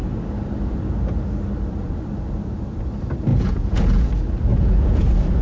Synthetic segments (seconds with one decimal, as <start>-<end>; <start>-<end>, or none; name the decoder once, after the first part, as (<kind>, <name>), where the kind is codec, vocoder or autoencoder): 3.3-4.1 (vocoder, Vocos); 4.5-5.4